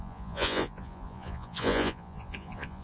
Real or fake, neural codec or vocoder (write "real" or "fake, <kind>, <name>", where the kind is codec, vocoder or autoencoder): fake, vocoder, Vocos